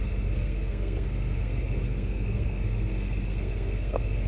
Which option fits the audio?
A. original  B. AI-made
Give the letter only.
B